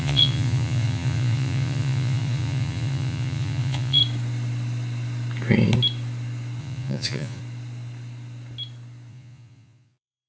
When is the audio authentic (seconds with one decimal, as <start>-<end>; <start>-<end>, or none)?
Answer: 4.0-6.6; 7.4-9.1